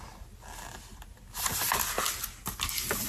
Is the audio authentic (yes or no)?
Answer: yes